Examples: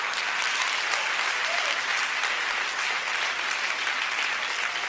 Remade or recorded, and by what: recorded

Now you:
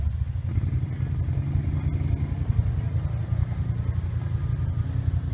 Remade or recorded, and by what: recorded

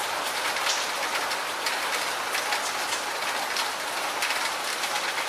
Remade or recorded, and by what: recorded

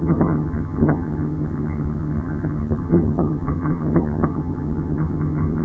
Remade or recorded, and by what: remade, vocoder, HiFi-GAN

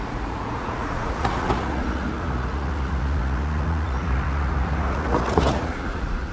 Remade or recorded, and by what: remade, vocoder, Vocos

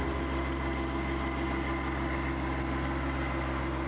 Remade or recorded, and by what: recorded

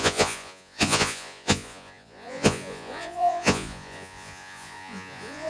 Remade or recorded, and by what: remade, vocoder, Vocos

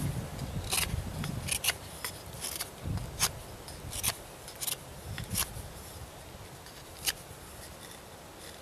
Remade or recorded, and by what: recorded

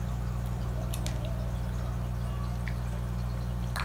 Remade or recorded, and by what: recorded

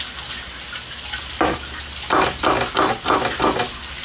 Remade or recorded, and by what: recorded